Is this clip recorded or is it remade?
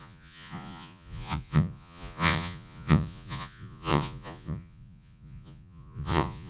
remade